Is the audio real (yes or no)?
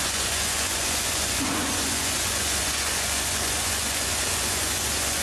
no